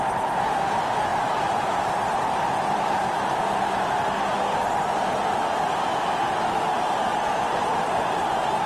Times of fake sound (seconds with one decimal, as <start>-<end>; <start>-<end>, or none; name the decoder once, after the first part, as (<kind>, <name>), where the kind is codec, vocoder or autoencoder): none